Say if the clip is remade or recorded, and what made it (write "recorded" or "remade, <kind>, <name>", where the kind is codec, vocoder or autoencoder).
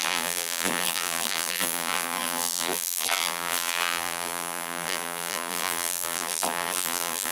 remade, vocoder, BigVGAN v2